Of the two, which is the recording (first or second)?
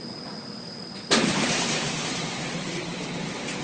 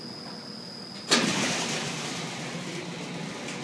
second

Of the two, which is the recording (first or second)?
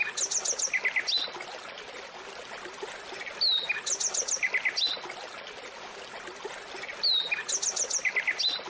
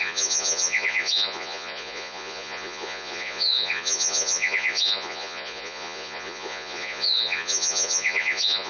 first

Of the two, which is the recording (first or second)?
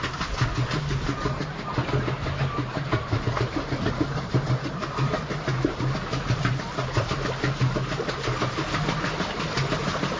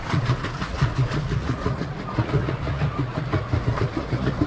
first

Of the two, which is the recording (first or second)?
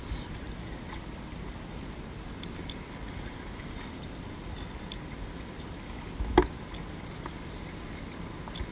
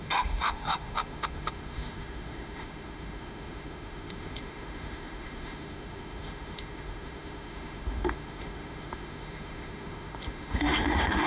first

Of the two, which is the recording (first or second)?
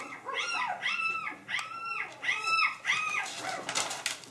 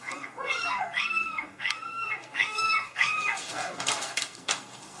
first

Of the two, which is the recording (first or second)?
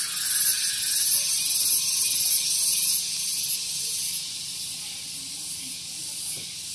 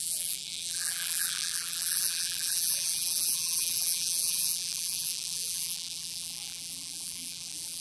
first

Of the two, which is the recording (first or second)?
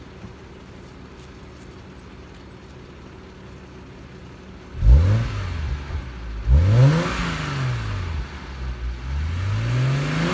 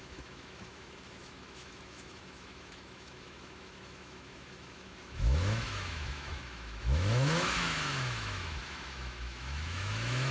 first